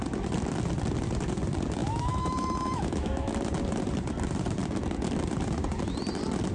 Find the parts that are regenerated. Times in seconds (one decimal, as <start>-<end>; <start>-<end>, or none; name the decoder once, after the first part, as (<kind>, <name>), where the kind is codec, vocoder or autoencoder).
1.8-3.3 (autoencoder, DAC-VAE)

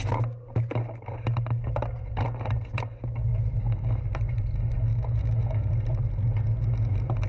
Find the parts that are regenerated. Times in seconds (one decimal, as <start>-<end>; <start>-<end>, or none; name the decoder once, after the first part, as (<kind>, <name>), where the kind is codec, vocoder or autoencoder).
3.3-4.0 (autoencoder, DAC-VAE); 4.9-5.7

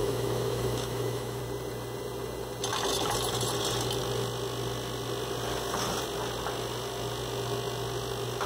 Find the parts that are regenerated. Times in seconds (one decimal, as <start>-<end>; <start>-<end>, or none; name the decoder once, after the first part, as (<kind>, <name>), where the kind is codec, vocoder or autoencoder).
0.0-1.4 (autoencoder, DAC-VAE)